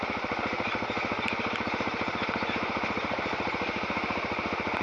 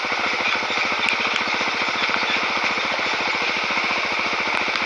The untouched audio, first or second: second